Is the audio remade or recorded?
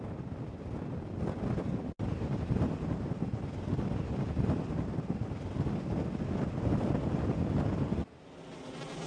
recorded